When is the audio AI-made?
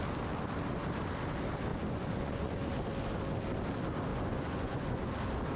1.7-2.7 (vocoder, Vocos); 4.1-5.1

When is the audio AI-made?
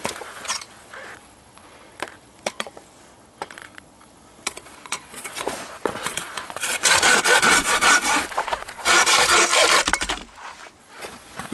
0.0-9.5 (vocoder, Vocos); 10.8-11.5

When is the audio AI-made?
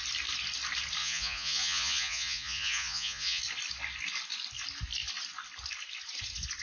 1.0-3.4 (vocoder, Vocos)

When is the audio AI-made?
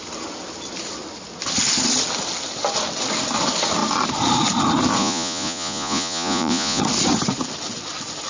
5.0-6.8 (vocoder, Vocos)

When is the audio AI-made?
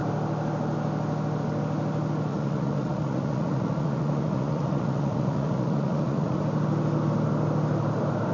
2.3-6.4 (vocoder, Vocos)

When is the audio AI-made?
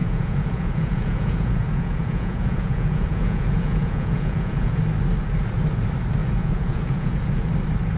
0.0-4.8 (vocoder, Vocos); 6.2-7.5